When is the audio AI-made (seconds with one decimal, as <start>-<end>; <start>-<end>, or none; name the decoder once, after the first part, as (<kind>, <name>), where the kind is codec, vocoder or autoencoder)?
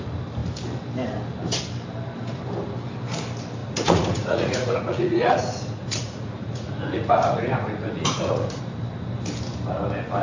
3.6-8.6 (vocoder, Vocos)